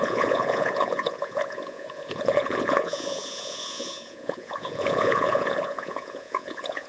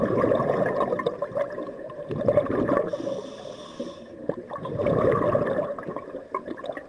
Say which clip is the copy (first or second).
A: first